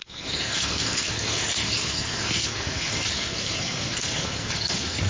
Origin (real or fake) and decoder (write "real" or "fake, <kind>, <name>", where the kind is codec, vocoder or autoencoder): fake, codec, SNAC